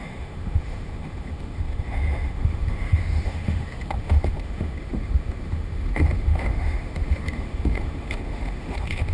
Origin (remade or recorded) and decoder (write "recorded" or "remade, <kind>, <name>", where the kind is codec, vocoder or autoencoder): remade, autoencoder, DAC-VAE